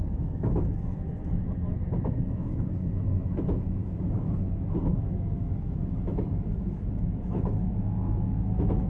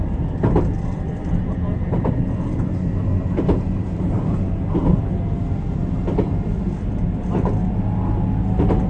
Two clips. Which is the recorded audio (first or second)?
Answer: second